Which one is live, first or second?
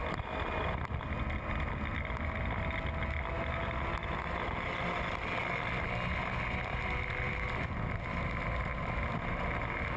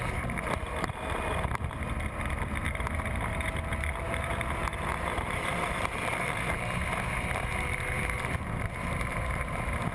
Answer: first